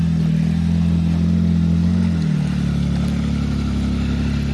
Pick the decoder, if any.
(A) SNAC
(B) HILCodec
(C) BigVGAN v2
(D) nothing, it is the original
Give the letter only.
D